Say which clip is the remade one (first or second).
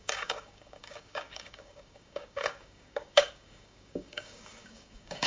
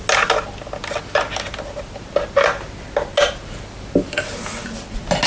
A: first